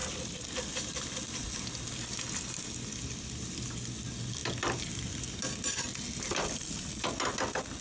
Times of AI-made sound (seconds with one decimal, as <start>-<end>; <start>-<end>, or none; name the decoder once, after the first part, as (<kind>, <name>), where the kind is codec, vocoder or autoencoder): none